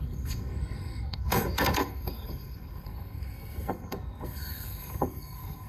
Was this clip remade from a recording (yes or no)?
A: yes